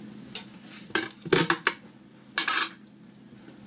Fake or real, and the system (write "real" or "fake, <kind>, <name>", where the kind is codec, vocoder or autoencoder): real